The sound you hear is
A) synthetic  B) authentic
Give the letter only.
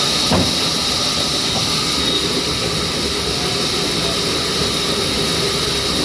B